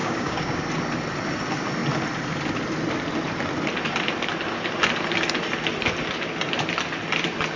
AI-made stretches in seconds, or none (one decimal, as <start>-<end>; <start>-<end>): 0.0-0.6